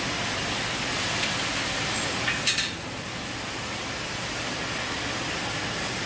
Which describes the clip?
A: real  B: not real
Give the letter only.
A